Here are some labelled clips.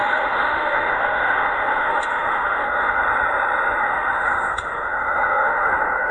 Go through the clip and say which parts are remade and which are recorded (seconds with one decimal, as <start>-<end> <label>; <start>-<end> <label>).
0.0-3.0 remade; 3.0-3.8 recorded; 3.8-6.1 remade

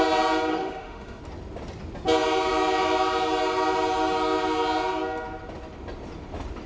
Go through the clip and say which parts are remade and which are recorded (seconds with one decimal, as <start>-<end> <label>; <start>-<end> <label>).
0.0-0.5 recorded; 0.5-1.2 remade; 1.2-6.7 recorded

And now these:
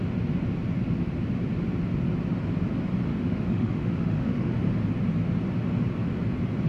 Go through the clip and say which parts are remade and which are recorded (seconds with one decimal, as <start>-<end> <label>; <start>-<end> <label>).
0.0-3.1 recorded; 3.1-4.5 remade; 4.5-6.7 recorded